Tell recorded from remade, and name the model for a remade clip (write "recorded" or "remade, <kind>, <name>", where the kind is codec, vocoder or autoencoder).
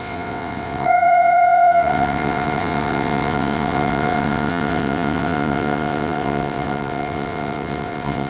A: remade, vocoder, WaveNeXt